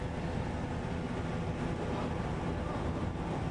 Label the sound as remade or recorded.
recorded